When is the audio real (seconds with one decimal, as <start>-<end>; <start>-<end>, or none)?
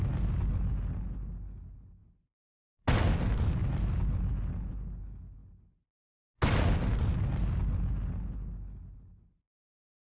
0.0-10.0